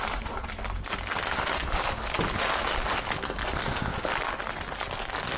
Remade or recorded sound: recorded